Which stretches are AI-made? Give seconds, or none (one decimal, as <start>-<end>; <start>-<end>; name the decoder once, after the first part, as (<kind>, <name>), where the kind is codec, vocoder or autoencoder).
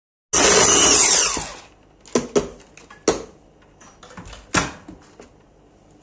none